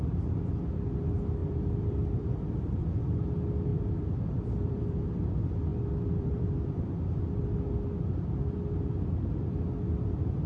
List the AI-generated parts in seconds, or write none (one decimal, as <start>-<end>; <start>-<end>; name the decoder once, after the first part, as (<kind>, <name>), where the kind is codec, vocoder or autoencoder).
1.4-3.0 (vocoder, BigVGAN v2); 3.7-5.0; 5.7-7.4

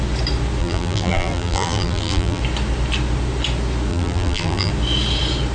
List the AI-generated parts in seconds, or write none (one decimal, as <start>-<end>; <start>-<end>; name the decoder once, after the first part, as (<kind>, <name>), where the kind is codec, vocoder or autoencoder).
0.6-2.4 (vocoder, BigVGAN v2); 3.9-4.7

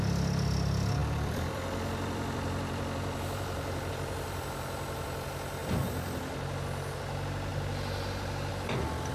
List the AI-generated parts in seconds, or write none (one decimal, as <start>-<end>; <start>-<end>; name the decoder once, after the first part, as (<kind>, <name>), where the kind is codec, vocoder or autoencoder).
1.0-3.9 (vocoder, BigVGAN v2); 5.6-6.2

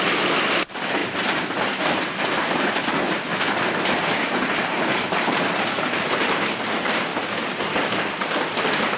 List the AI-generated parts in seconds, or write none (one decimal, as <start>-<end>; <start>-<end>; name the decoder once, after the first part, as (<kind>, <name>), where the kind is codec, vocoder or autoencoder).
0.0-7.1 (vocoder, BigVGAN v2)

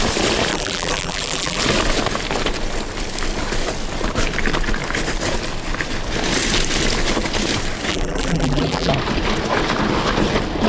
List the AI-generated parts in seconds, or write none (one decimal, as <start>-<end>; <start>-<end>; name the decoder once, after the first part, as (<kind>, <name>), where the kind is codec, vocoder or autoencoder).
0.5-1.6 (vocoder, BigVGAN v2); 7.9-8.9

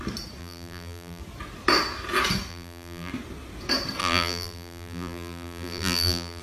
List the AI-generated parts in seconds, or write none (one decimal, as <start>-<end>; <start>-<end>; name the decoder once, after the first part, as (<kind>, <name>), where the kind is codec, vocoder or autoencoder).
0.4-1.2 (vocoder, BigVGAN v2); 2.5-3.1; 4.0-6.4

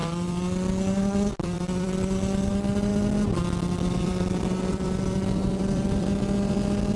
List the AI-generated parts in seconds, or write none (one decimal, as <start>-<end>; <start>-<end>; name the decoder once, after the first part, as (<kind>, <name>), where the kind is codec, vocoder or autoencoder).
0.0-2.9 (vocoder, BigVGAN v2); 4.0-7.0